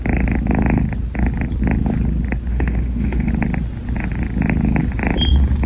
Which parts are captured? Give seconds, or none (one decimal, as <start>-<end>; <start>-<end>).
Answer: 0.0-2.5; 3.3-5.7